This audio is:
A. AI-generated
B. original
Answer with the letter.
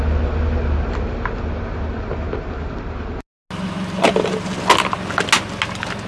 B